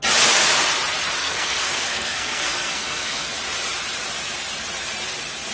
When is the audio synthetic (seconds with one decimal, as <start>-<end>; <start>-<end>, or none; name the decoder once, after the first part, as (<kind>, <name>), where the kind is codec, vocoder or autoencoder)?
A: 1.2-3.3 (codec, SNAC)